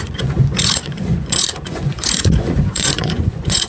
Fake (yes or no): yes